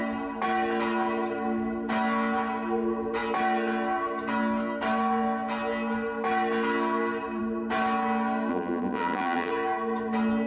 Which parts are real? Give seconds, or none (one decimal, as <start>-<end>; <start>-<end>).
0.0-8.5; 9.5-10.5

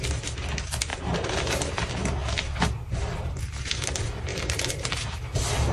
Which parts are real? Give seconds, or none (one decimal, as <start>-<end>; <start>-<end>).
0.0-0.9; 1.7-4.3; 4.9-5.7